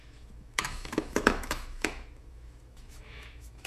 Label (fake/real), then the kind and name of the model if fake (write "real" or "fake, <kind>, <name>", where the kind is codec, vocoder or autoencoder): fake, autoencoder, DAC-VAE